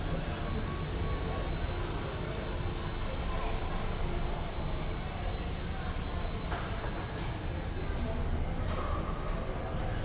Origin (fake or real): real